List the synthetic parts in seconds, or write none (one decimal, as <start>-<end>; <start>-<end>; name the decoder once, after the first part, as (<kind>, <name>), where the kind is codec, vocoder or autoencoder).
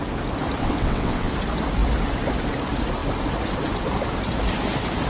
0.6-1.3 (vocoder, WaveNeXt)